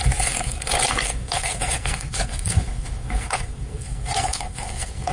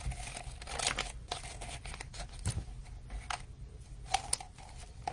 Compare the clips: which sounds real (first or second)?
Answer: second